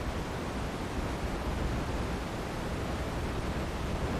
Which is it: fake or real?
real